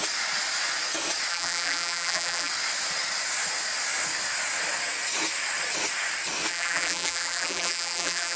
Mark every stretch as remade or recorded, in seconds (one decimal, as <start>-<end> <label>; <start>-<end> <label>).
0.0-1.3 recorded; 1.3-2.5 remade; 2.5-6.5 recorded; 6.5-8.4 remade